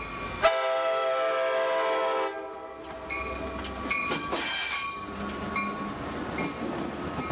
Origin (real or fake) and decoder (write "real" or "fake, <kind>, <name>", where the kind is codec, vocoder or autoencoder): real